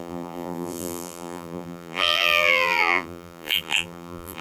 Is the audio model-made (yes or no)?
yes